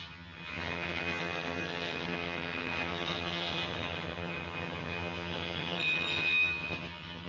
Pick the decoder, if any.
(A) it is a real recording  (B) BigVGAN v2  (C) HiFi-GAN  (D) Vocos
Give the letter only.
C